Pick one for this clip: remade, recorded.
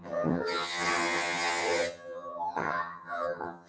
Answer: remade